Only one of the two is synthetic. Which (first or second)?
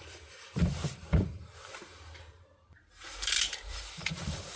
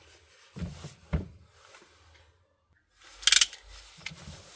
first